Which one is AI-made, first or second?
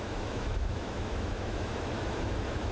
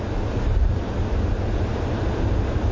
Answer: first